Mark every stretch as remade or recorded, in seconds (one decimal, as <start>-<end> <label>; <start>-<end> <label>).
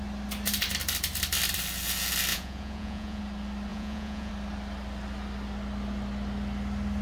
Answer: 0.0-2.3 recorded; 2.3-3.2 remade; 3.2-3.7 recorded; 3.7-4.3 remade; 4.3-7.0 recorded